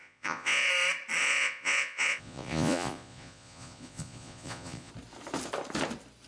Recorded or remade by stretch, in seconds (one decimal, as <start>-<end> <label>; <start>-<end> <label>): 0.0-0.7 remade; 0.7-1.2 recorded; 1.2-4.9 remade; 4.9-6.3 recorded